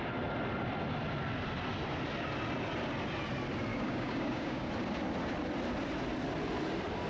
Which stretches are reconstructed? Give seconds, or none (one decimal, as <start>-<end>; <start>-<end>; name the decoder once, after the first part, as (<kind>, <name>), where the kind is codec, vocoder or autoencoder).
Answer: 3.7-4.7 (codec, DAC)